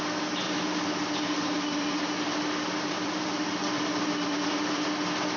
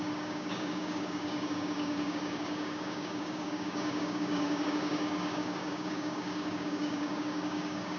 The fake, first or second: second